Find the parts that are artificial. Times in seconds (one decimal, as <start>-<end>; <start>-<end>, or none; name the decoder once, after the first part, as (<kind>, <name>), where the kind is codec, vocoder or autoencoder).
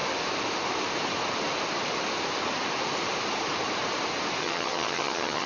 4.4-5.5 (vocoder, HiFi-GAN)